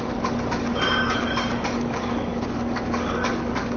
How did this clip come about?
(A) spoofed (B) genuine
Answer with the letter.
A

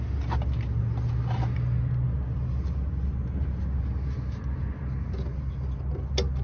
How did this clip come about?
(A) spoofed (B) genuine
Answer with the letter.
B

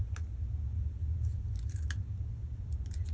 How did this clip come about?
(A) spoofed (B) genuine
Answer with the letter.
B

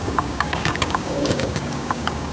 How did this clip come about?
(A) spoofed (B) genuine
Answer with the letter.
A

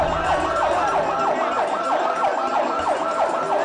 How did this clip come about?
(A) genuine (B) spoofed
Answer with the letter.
A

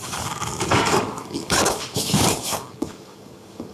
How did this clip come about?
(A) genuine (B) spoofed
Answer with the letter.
B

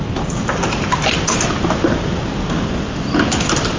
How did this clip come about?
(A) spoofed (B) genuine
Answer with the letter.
B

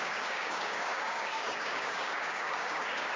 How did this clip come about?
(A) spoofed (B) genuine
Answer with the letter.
A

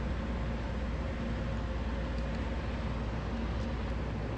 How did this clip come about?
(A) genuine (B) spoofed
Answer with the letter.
A